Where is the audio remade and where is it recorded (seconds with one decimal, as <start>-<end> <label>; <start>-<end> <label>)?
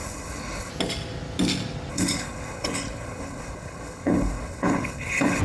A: 0.0-0.7 remade; 0.7-1.9 recorded; 1.9-5.4 remade